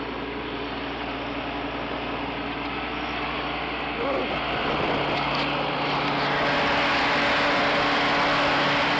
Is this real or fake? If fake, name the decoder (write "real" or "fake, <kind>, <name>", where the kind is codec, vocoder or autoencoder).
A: real